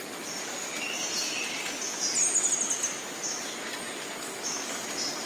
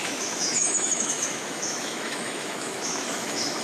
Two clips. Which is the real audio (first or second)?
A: first